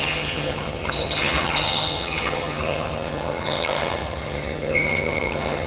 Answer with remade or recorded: remade